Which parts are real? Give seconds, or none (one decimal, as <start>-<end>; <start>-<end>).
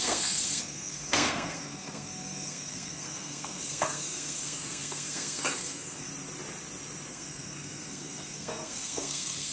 6.1-7.1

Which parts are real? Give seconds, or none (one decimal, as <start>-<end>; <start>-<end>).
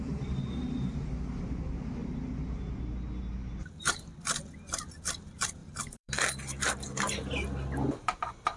0.0-5.6; 6.1-8.6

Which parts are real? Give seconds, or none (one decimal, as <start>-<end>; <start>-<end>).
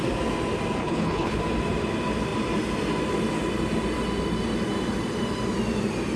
0.0-0.8; 1.4-6.2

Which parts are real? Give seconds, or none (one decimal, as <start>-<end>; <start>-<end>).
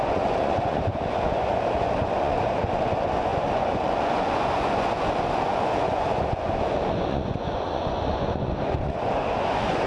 none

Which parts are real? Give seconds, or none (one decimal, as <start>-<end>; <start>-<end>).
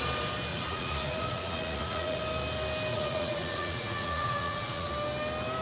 0.0-0.5; 2.2-2.9; 4.9-5.6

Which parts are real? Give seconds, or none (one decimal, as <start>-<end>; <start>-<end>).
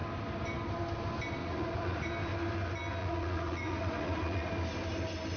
0.0-1.4; 2.1-3.0; 4.5-5.4